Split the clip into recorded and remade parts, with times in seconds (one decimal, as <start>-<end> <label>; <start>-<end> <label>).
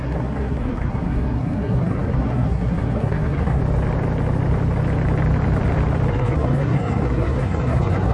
0.0-3.6 remade; 3.6-6.1 recorded; 6.1-8.1 remade